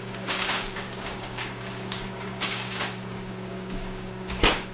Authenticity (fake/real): fake